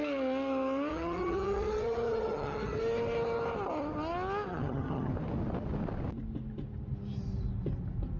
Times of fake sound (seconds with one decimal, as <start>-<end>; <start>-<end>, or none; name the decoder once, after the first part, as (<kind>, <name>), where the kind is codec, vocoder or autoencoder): 0.9-2.8 (vocoder, HiFi-GAN); 4.5-5.1